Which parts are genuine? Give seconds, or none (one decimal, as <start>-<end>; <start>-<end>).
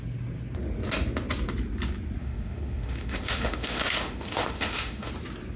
0.0-2.2; 5.1-5.6